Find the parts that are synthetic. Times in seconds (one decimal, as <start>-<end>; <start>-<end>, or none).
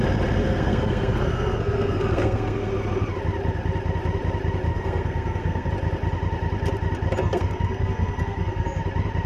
0.4-2.7; 4.7-5.7; 7.2-8.8